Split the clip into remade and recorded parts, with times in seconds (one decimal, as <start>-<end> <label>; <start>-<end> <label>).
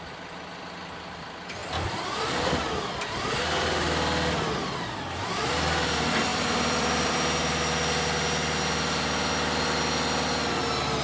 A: 0.0-1.6 recorded; 1.6-2.5 remade; 2.5-6.3 recorded; 6.3-7.1 remade; 7.1-11.0 recorded